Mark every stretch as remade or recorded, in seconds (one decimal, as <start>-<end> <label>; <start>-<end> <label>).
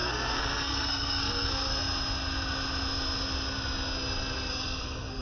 0.0-1.7 remade; 1.7-4.5 recorded; 4.5-5.2 remade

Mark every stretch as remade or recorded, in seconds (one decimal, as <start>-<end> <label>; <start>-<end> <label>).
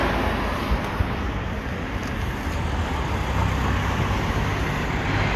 0.0-5.4 recorded